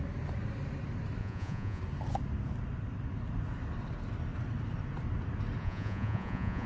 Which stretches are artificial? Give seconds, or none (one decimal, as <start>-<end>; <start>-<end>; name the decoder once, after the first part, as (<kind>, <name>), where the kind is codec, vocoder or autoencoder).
1.2-1.8 (vocoder, Vocos); 5.6-6.7